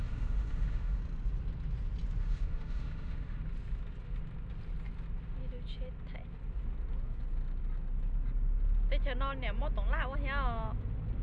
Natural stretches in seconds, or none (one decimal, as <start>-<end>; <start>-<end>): 1.0-2.2; 3.4-11.2

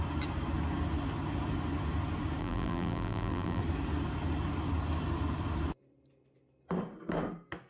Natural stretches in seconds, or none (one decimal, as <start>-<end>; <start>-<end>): 0.0-2.4; 3.6-7.7

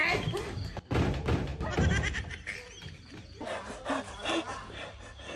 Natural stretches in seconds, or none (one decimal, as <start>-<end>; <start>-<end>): 0.0-5.4

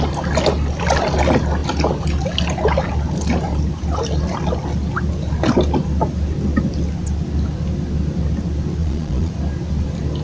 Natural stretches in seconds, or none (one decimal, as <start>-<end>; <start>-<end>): 0.0-8.8; 9.3-10.2

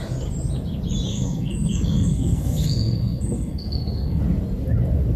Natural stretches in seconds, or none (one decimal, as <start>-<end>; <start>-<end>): 0.0-1.1; 4.2-5.2

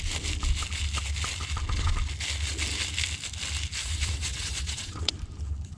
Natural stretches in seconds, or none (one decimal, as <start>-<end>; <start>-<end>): 0.0-3.8; 5.1-5.8